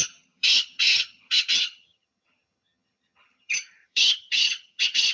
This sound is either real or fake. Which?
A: fake